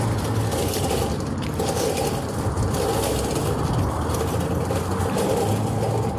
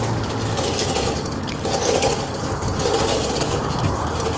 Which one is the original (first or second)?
first